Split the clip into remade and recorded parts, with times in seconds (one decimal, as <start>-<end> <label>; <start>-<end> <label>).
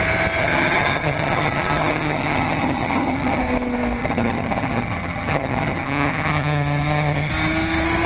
0.0-0.4 recorded; 0.4-3.4 remade; 3.4-4.0 recorded; 4.0-7.3 remade; 7.3-8.1 recorded